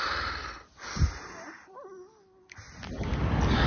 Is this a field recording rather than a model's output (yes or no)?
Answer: yes